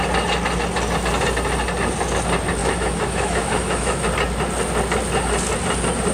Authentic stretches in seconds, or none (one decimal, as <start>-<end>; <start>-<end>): 0.0-2.6; 4.0-6.1